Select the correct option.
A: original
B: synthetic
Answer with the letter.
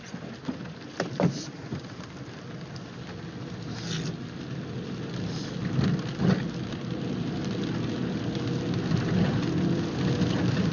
A